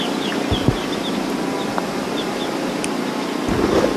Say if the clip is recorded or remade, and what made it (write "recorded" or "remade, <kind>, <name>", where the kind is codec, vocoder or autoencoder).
recorded